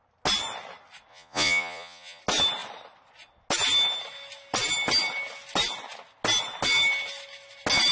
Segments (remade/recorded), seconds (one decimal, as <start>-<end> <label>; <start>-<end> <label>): 0.0-1.1 recorded; 1.1-2.2 remade; 2.2-7.9 recorded